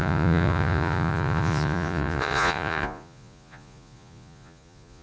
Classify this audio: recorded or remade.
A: remade